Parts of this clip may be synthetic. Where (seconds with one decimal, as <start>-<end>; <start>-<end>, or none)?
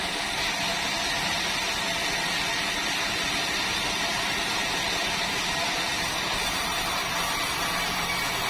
none